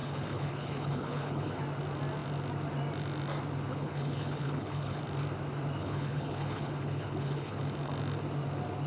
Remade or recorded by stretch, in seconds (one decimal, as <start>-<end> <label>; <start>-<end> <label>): 0.0-1.6 remade; 1.6-3.7 recorded; 3.7-5.0 remade; 5.0-5.8 recorded; 5.8-7.6 remade; 7.6-8.9 recorded